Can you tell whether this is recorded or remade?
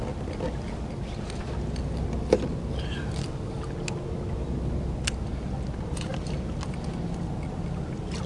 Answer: recorded